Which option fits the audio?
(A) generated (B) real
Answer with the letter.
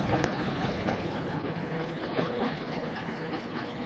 A